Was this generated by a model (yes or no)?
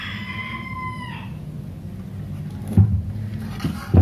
no